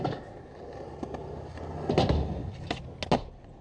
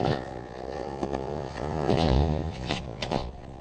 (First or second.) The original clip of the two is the first